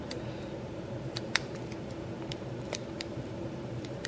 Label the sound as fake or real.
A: fake